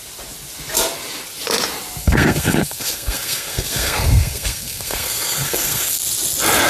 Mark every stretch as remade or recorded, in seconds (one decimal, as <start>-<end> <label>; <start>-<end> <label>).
0.0-2.0 recorded; 2.0-6.0 remade; 6.0-6.7 recorded